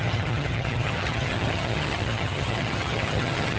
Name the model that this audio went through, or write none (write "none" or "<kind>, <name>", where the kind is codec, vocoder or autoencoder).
vocoder, HiFi-GAN